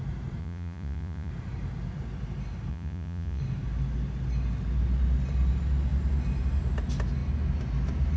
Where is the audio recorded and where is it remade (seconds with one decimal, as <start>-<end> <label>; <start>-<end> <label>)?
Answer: 0.0-0.4 recorded; 0.4-1.3 remade; 1.3-2.7 recorded; 2.7-3.4 remade; 3.4-8.2 recorded